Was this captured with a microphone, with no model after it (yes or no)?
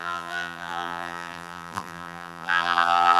no